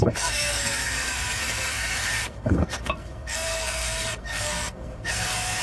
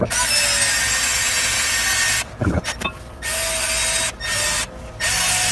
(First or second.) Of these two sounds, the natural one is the second